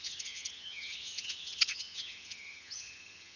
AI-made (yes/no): yes